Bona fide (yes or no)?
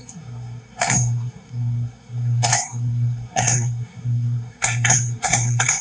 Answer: no